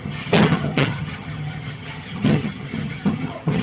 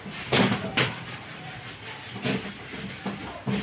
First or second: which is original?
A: second